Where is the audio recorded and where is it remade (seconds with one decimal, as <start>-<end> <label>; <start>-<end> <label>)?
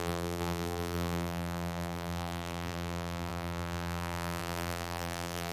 0.0-5.5 remade